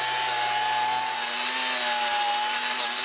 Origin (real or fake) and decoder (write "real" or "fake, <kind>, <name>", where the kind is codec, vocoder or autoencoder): real